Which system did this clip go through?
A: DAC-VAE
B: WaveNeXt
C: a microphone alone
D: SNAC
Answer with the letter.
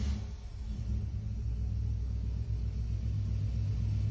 C